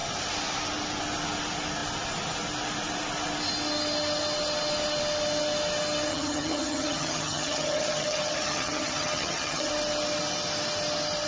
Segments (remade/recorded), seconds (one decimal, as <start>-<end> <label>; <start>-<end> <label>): 0.0-6.1 recorded; 6.1-9.7 remade; 9.7-11.3 recorded